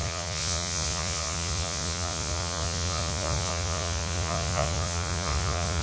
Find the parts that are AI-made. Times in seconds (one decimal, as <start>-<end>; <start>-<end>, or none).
0.0-5.8